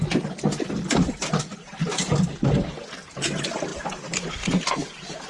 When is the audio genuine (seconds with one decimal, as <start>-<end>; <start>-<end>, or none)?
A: 0.0-5.3